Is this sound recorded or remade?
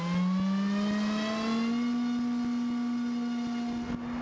recorded